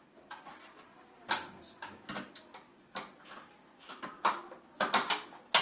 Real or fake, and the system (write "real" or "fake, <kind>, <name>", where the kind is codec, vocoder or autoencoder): real